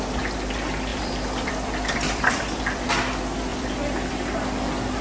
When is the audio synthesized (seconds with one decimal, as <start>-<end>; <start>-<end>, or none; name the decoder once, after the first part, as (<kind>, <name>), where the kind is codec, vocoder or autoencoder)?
0.9-2.9 (vocoder, BigVGAN v2); 3.5-4.1